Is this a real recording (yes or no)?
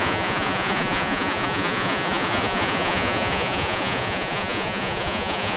no